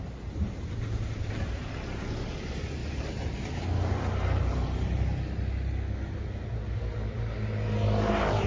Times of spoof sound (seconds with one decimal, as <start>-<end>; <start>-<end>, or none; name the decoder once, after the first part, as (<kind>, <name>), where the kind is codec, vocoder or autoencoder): none